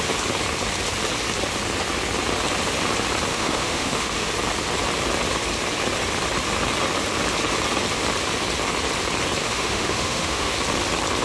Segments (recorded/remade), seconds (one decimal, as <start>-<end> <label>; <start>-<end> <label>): 0.0-3.3 recorded; 3.3-4.3 remade; 4.3-9.4 recorded; 9.4-10.5 remade; 10.5-11.2 recorded